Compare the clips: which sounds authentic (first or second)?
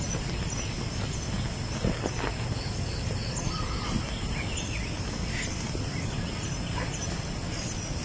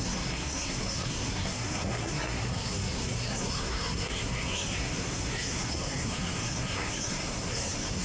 first